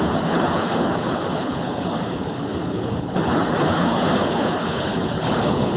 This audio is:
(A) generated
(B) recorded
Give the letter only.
A